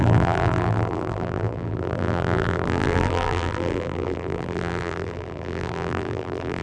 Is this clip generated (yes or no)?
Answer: yes